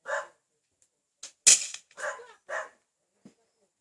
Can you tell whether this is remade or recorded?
recorded